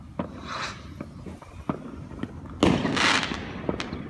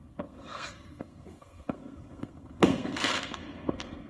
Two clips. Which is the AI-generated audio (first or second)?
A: second